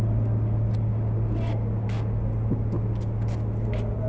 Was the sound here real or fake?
real